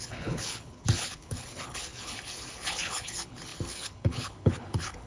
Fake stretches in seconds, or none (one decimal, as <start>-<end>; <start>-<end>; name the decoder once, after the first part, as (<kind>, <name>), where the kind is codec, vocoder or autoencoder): 0.0-5.1 (codec, HILCodec)